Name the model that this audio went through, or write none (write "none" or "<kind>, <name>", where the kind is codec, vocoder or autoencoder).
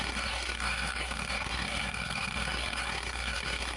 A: codec, SNAC